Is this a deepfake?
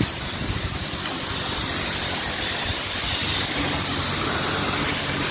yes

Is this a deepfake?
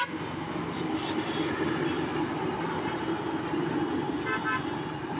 no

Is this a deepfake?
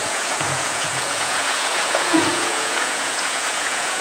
yes